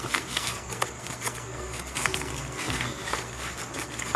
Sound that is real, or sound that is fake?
fake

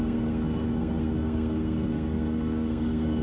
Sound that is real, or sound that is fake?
fake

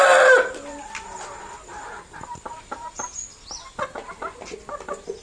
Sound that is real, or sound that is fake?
real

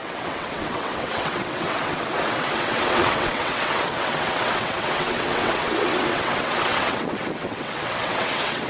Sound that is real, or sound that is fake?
fake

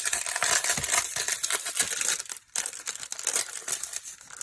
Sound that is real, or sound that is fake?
real